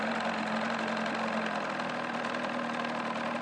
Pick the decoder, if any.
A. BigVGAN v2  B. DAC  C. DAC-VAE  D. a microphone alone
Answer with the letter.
D